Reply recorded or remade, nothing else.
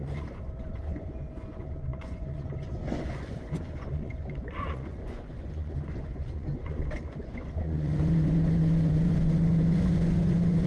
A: remade